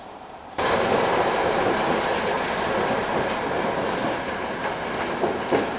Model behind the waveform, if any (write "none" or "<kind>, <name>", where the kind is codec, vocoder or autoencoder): none